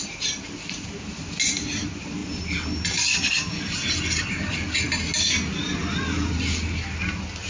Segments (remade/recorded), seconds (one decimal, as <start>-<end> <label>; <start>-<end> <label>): 0.0-7.5 recorded